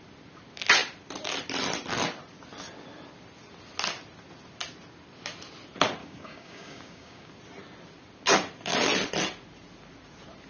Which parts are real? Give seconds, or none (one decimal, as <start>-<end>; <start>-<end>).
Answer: 0.0-6.0; 7.3-10.5